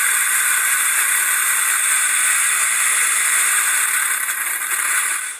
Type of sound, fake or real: real